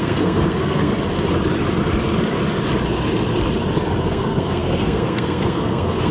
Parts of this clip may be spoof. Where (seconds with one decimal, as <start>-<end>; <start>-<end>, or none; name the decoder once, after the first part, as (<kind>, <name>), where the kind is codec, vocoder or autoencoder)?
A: 0.0-0.9 (codec, SNAC); 4.0-6.1